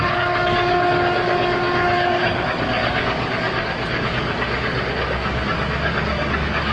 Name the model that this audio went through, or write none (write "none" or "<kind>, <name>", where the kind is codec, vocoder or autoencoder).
codec, DAC